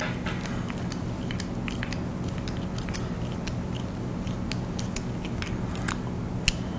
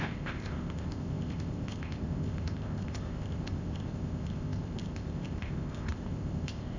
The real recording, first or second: first